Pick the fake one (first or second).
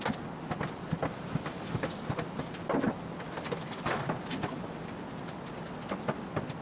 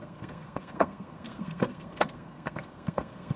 second